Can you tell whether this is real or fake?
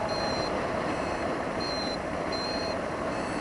fake